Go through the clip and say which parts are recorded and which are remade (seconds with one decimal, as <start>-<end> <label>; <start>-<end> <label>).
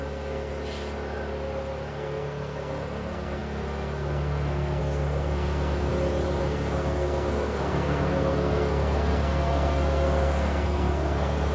0.0-0.5 remade; 0.5-1.9 recorded; 1.9-5.9 remade; 5.9-6.4 recorded; 6.4-11.5 remade